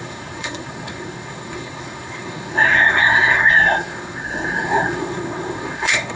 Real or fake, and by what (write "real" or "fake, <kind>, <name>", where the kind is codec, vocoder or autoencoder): fake, codec, SNAC